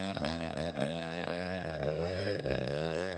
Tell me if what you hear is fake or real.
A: fake